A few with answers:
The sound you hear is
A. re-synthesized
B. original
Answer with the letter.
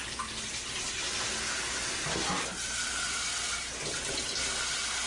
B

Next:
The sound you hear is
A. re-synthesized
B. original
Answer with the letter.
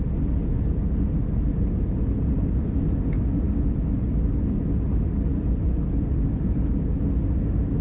B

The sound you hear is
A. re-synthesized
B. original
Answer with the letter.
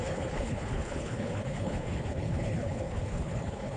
A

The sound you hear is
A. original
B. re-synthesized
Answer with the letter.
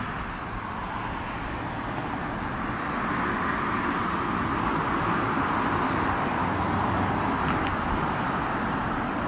A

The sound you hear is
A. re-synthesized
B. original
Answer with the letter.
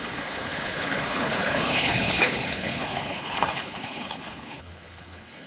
A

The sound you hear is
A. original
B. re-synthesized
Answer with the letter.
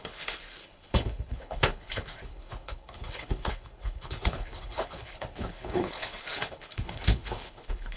B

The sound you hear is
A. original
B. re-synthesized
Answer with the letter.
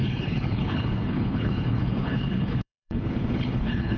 B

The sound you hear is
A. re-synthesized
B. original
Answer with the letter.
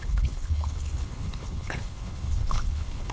A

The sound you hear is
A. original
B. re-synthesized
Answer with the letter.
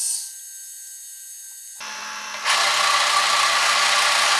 A